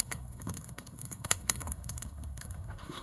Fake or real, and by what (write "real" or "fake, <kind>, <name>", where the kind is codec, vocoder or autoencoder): fake, codec, SNAC